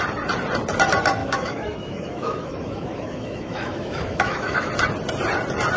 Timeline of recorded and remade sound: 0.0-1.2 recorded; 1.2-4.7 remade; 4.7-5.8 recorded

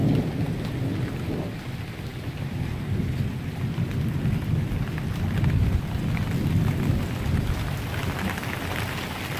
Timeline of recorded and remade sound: 0.0-9.4 recorded

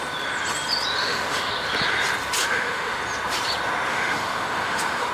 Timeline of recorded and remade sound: 0.0-1.0 recorded; 1.0-1.5 remade; 1.5-2.4 recorded; 2.4-3.0 remade; 3.0-3.9 recorded; 3.9-5.1 remade

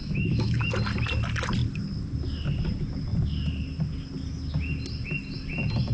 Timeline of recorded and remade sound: 0.0-0.7 remade; 0.7-5.9 recorded

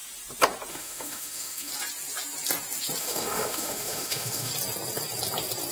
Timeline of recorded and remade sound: 0.0-0.7 recorded; 0.7-1.7 remade; 1.7-3.0 recorded; 3.0-4.5 remade; 4.5-5.7 recorded

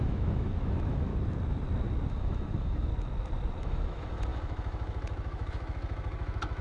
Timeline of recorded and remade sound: 0.0-1.1 remade; 1.1-2.1 recorded; 2.1-2.9 remade; 2.9-3.6 recorded; 3.6-6.6 remade

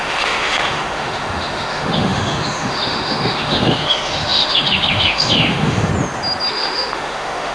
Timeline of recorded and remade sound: 0.0-5.9 remade; 5.9-6.5 recorded; 6.5-7.5 remade

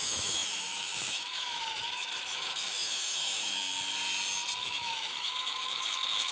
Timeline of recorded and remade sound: 0.0-3.6 remade; 3.6-4.6 recorded; 4.6-6.3 remade